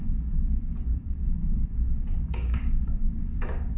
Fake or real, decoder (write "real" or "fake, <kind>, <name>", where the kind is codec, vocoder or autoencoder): fake, codec, DAC